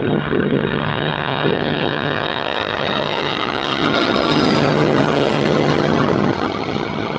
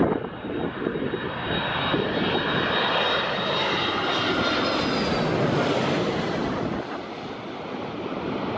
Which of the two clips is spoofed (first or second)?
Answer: first